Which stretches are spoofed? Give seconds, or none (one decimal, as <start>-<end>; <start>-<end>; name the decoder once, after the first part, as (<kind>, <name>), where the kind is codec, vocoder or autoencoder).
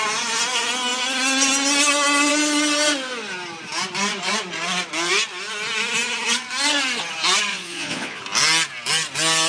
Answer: 7.5-8.2 (vocoder, Vocos)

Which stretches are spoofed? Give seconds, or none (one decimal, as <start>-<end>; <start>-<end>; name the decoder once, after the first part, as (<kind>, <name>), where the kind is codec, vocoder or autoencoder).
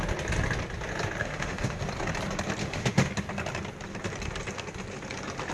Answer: 1.2-1.8 (autoencoder, DAC-VAE); 2.6-3.1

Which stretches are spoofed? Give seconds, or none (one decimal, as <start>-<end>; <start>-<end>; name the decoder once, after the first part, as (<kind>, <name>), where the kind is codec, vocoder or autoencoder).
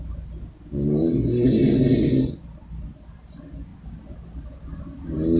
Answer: none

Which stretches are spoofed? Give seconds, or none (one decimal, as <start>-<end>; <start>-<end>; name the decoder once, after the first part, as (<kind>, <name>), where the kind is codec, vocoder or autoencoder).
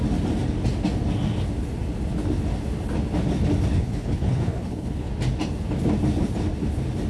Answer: 3.7-5.1 (codec, HILCodec)